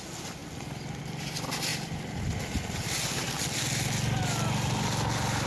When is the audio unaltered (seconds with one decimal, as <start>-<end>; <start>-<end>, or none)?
0.0-5.5